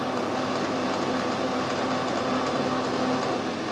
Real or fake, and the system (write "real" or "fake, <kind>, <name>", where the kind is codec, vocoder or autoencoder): real